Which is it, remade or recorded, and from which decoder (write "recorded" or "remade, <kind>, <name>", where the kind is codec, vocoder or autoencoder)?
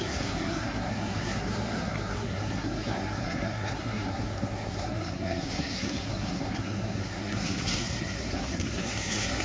remade, codec, SNAC